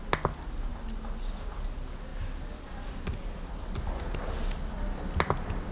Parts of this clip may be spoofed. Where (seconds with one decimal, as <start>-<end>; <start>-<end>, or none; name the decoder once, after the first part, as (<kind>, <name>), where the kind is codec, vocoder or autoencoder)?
none